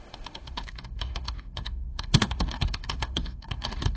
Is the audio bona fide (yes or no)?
no